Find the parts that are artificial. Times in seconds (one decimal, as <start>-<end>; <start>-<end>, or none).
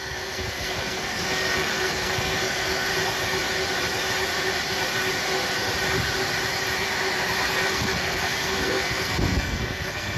0.0-2.9; 7.5-10.2